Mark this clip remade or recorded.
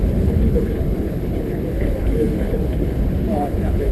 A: remade